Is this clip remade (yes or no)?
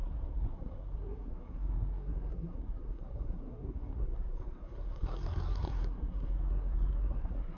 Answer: yes